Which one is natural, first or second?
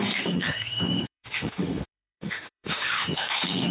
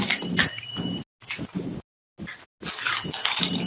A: second